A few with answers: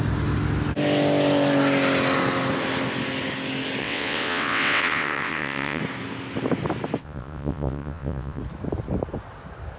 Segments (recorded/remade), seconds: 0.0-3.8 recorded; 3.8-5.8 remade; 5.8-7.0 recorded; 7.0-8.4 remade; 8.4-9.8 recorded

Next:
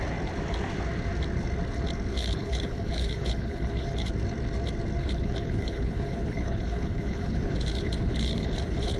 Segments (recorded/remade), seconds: 0.0-2.1 recorded; 2.1-4.1 remade; 4.1-5.0 recorded; 5.0-9.0 remade

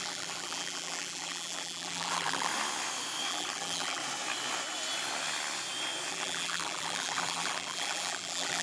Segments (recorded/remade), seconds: 0.0-2.5 remade; 2.5-3.3 recorded; 3.3-4.0 remade; 4.0-6.1 recorded; 6.1-8.6 remade

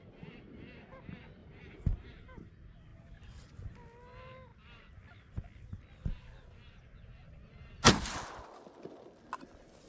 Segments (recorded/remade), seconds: 0.0-1.4 recorded; 1.4-2.5 remade; 2.5-9.9 recorded

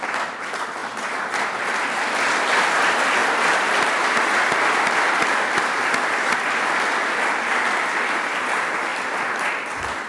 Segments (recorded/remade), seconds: 0.0-0.8 recorded; 0.8-1.3 remade; 1.3-3.2 recorded; 3.2-6.9 remade; 6.9-10.1 recorded

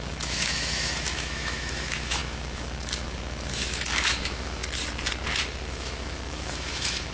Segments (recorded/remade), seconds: 0.0-4.6 remade; 4.6-5.7 recorded; 5.7-7.1 remade

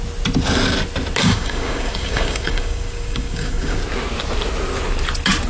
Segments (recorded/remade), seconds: 0.0-1.2 recorded; 1.2-3.8 remade; 3.8-5.5 recorded